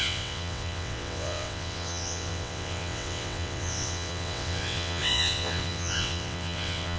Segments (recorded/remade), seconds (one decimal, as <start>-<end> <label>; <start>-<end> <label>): 0.0-7.0 remade